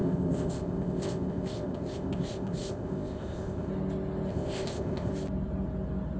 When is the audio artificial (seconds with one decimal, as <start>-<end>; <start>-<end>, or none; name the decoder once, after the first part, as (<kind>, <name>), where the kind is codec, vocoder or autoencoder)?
0.0-3.7 (codec, ZipCodec); 4.3-5.1

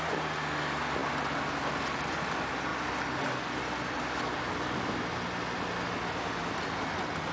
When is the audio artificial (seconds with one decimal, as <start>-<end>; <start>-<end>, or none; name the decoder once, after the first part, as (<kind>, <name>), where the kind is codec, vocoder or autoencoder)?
none

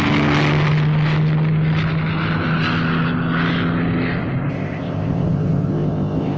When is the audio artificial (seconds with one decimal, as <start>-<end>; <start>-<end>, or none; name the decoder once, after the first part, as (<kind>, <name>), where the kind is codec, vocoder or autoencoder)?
4.5-6.4 (codec, ZipCodec)

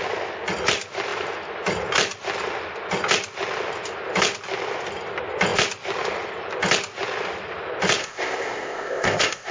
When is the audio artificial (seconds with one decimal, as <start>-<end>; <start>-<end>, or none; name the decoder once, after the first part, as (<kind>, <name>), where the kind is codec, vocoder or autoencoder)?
8.0-9.5 (codec, ZipCodec)

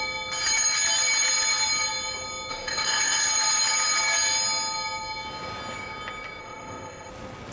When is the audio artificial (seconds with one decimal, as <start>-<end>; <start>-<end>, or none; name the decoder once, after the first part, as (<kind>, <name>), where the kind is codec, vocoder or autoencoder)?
2.5-3.3 (codec, ZipCodec); 6.4-7.1

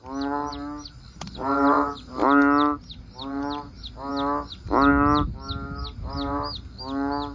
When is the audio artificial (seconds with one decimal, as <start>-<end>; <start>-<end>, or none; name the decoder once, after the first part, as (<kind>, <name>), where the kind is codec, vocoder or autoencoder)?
none